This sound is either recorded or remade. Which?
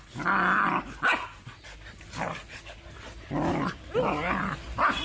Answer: recorded